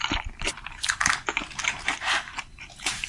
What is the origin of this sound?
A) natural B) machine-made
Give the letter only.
B